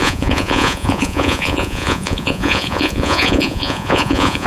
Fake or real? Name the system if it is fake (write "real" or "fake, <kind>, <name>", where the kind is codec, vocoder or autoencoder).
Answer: fake, vocoder, Vocos